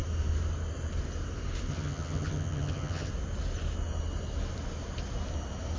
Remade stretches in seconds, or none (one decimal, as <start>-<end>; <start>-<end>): 1.7-3.1